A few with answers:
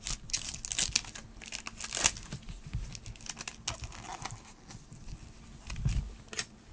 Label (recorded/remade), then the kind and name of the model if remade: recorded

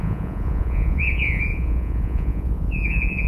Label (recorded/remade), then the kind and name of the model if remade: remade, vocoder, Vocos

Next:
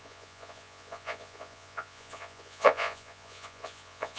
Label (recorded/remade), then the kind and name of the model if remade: remade, vocoder, Vocos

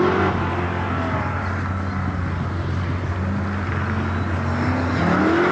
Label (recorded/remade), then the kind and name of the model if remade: recorded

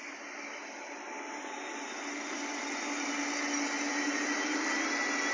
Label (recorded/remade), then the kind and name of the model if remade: recorded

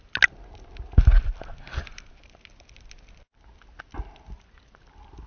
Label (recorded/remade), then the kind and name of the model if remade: recorded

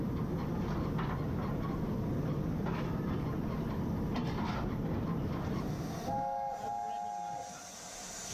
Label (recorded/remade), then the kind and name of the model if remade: recorded